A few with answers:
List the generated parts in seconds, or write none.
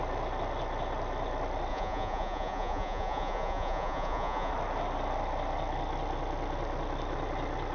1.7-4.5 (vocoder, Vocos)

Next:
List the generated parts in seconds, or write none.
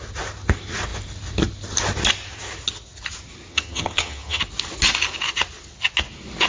3.5-4.4 (vocoder, HiFi-GAN)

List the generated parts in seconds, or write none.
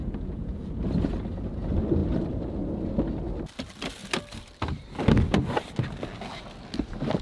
0.0-0.7 (vocoder, Vocos)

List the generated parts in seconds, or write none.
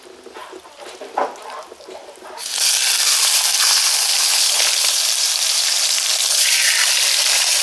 4.2-5.0 (codec, HILCodec)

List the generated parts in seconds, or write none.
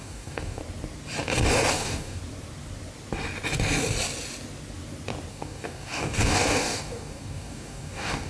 0.0-0.6 (codec, DAC); 1.7-2.2; 5.3-8.3